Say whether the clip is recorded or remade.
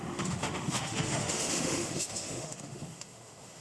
remade